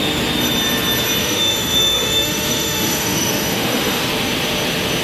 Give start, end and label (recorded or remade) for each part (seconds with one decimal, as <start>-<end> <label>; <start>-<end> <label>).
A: 0.0-1.2 recorded; 1.2-4.0 remade; 4.0-5.0 recorded